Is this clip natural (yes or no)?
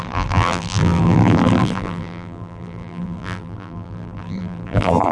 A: no